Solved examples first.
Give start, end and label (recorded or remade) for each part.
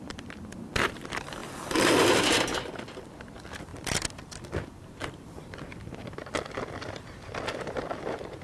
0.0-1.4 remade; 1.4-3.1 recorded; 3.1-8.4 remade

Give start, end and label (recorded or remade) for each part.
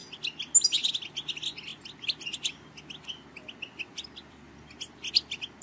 0.0-5.6 recorded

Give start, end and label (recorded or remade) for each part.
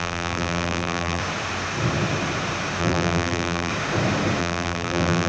0.0-1.2 remade; 1.2-2.8 recorded; 2.8-3.7 remade; 3.7-4.4 recorded; 4.4-5.3 remade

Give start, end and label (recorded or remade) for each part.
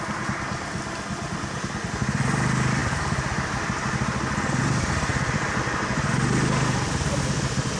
0.0-5.1 recorded; 5.1-6.1 remade; 6.1-7.8 recorded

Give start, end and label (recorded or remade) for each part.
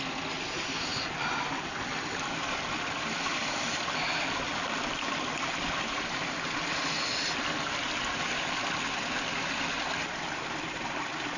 0.0-0.9 recorded; 0.9-2.7 remade; 2.7-3.4 recorded; 3.4-5.6 remade; 5.6-11.4 recorded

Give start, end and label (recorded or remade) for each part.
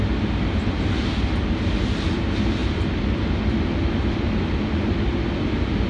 0.0-5.9 recorded